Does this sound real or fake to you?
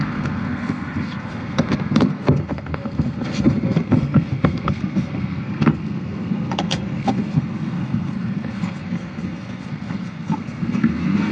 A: fake